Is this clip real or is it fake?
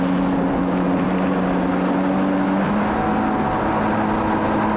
real